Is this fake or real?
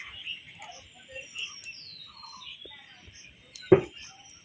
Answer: real